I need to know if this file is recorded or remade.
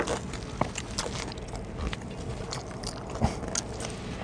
recorded